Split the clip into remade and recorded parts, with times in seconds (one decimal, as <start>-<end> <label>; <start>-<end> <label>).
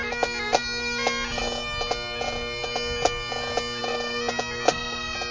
0.0-5.3 recorded